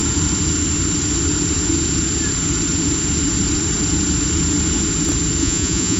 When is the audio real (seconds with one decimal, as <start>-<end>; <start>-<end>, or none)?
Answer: 0.0-5.4